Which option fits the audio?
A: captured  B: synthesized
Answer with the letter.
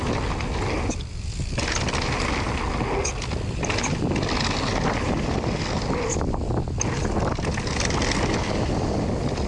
A